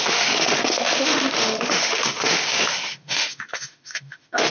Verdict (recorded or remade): remade